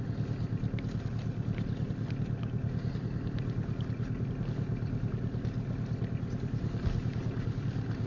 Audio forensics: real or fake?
real